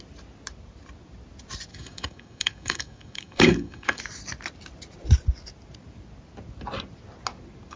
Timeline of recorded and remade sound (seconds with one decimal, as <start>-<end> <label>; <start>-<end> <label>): 0.0-1.7 recorded; 1.7-4.0 remade; 4.0-7.8 recorded